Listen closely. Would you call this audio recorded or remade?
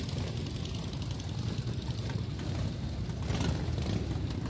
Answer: recorded